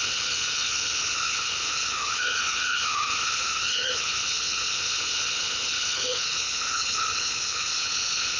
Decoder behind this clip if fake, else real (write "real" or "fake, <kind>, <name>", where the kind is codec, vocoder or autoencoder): fake, codec, HILCodec